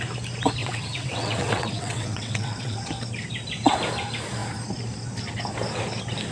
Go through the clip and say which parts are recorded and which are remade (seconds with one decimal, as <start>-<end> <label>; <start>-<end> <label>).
0.0-0.6 recorded; 0.6-2.8 remade; 2.8-6.3 recorded